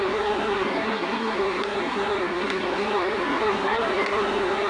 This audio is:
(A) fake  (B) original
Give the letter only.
A